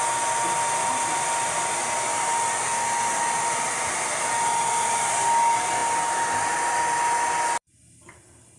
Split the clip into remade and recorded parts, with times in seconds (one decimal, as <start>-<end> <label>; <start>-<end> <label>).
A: 0.0-8.6 recorded